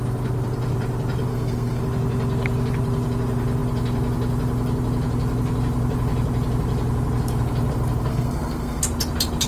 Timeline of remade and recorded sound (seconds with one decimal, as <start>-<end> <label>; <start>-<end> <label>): 0.0-1.3 recorded; 1.3-1.8 remade; 1.8-8.1 recorded; 8.1-8.8 remade; 8.8-9.5 recorded